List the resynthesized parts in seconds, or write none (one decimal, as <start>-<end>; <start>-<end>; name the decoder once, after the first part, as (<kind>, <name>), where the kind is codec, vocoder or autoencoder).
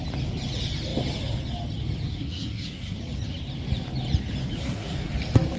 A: 2.1-3.0 (codec, SNAC); 4.6-5.1